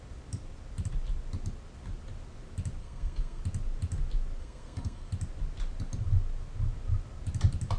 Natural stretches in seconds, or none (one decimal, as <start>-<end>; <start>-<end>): 0.0-2.8; 3.4-4.4; 5.1-7.8